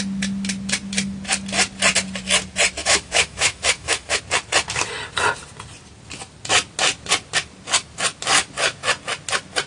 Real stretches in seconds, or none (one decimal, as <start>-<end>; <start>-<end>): 0.0-2.8; 4.2-9.7